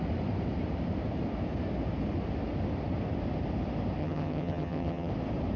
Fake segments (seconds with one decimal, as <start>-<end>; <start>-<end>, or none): 4.0-5.1